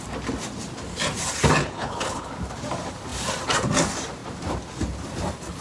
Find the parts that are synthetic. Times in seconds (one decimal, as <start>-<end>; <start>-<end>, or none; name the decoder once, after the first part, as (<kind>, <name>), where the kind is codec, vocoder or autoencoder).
1.6-2.3 (codec, HILCodec)